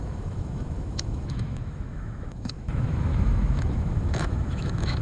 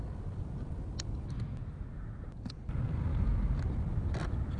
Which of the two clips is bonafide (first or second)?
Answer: second